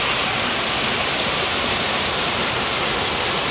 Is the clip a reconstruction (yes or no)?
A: no